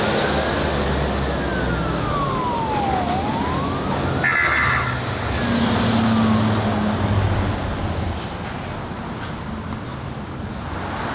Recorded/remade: recorded